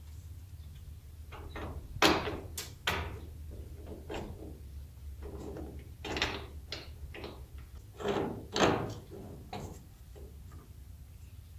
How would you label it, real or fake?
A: real